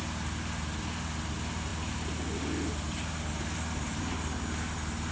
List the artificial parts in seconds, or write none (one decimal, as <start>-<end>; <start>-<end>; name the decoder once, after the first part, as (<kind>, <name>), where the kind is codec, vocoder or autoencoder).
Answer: none